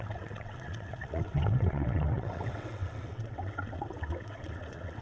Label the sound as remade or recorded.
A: remade